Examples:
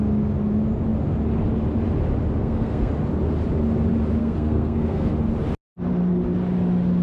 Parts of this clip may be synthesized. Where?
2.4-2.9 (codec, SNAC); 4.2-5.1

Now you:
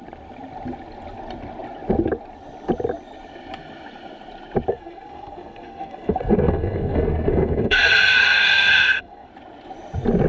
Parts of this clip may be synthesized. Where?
4.7-9.3 (codec, SNAC)

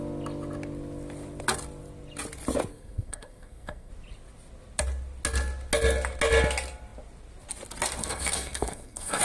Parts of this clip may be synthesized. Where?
2.7-3.9 (codec, SNAC); 8.0-9.2

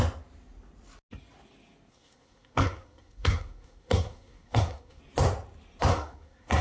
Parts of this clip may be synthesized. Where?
1.9-5.0 (codec, SNAC); 5.9-6.6

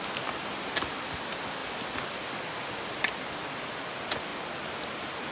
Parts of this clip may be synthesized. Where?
none